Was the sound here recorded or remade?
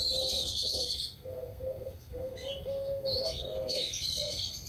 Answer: remade